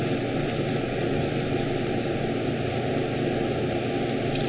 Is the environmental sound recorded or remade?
recorded